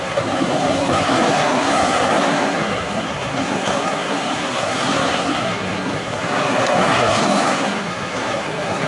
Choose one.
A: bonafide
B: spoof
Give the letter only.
B